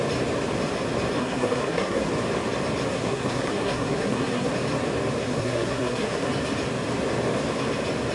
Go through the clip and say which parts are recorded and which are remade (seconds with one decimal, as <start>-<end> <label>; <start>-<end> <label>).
0.0-1.2 recorded; 1.2-2.1 remade; 2.1-2.9 recorded; 2.9-4.5 remade; 4.5-5.2 recorded; 5.2-6.3 remade; 6.3-8.1 recorded